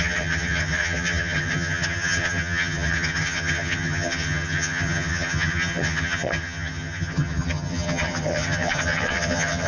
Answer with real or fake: fake